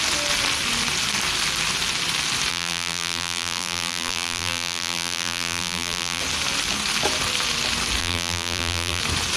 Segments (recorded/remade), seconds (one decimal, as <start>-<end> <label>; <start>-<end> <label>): 0.0-2.5 recorded; 2.5-6.2 remade; 6.2-8.0 recorded; 8.0-9.0 remade; 9.0-9.4 recorded